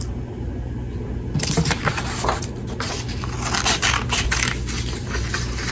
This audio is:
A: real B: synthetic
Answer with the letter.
A